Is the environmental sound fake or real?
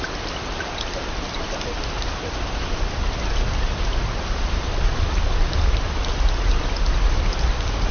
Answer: real